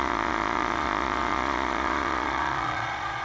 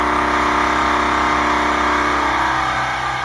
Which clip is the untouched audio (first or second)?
second